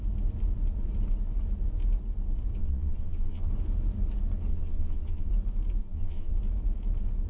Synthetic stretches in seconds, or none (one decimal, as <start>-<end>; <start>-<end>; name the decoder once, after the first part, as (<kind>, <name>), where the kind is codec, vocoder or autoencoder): 2.6-3.5 (vocoder, Vocos); 4.5-5.3; 5.8-6.4